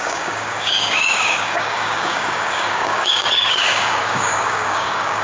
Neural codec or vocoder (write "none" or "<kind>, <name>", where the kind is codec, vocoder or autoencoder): codec, DAC